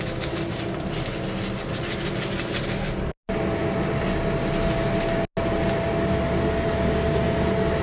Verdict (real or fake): real